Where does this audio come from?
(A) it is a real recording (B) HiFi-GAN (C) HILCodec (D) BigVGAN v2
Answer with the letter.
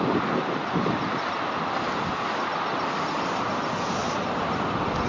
A